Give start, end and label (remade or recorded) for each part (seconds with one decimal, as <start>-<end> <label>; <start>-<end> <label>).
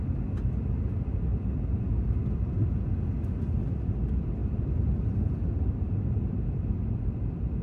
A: 0.0-1.3 recorded; 1.3-1.8 remade; 1.8-4.4 recorded; 4.4-7.0 remade; 7.0-7.6 recorded